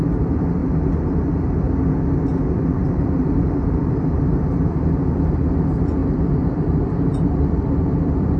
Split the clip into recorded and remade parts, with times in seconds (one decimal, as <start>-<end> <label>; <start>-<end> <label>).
0.0-6.0 recorded; 6.0-8.4 remade

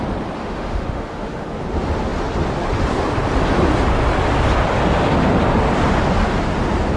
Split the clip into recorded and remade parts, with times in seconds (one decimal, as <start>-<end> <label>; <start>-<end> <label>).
0.0-0.4 recorded; 0.4-1.6 remade; 1.6-7.0 recorded

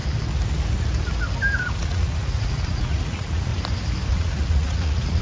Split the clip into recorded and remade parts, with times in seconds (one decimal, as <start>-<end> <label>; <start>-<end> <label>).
0.0-1.7 recorded; 1.7-3.5 remade; 3.5-4.1 recorded; 4.1-5.2 remade

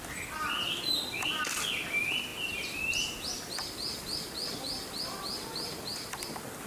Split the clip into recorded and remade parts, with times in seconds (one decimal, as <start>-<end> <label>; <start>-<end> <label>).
0.0-6.7 recorded

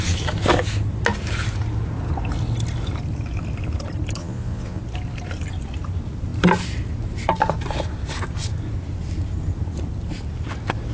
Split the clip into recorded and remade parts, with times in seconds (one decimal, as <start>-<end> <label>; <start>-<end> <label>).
0.0-4.2 recorded; 4.2-4.8 remade; 4.8-10.9 recorded

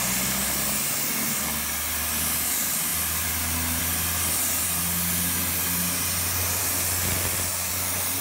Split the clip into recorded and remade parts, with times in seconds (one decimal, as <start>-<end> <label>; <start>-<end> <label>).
0.0-8.2 recorded

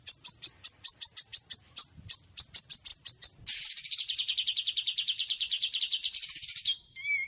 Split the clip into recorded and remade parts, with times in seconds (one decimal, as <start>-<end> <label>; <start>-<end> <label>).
0.0-7.3 recorded